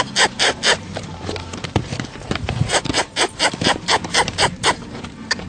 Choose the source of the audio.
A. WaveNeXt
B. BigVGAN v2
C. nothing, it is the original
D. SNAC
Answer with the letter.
B